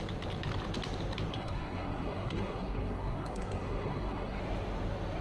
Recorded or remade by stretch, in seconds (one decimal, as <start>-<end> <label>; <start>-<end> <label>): 0.0-1.3 recorded; 1.3-4.4 remade; 4.4-5.2 recorded